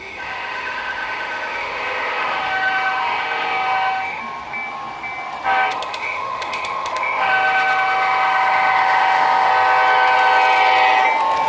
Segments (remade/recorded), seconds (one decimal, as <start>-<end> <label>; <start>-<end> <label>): 0.0-4.2 remade; 4.2-5.7 recorded; 5.7-9.5 remade; 9.5-11.5 recorded